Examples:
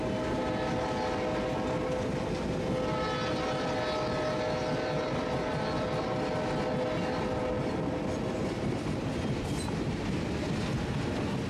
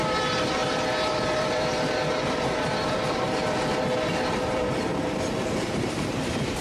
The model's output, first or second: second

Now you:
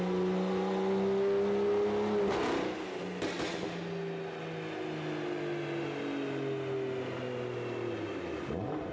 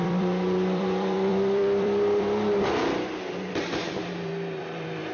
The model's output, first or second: second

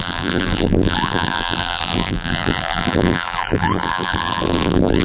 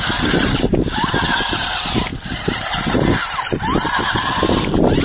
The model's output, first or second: first